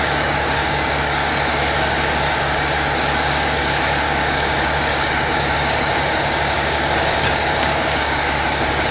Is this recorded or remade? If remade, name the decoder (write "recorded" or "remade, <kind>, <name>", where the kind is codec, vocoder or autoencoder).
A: remade, codec, DAC